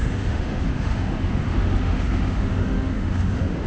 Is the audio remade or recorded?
remade